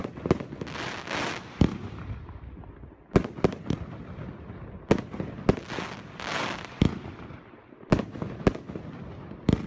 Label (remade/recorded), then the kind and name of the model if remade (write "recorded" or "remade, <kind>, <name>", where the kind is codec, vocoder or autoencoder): recorded